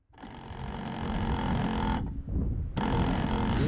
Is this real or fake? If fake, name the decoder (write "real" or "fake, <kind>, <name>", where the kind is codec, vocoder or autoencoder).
real